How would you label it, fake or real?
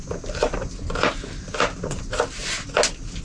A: real